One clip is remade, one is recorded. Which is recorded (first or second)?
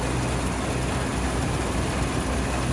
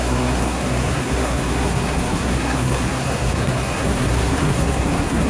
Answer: first